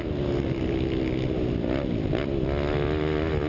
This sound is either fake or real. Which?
real